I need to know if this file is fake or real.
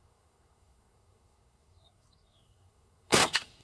fake